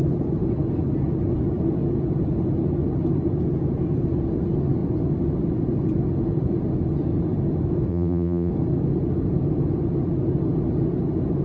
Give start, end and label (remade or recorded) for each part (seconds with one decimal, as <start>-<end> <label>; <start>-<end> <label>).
0.0-7.9 recorded; 7.9-8.5 remade; 8.5-11.4 recorded